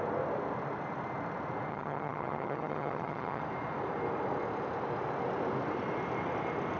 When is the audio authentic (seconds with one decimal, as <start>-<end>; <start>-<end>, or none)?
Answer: 0.0-1.7; 3.4-6.8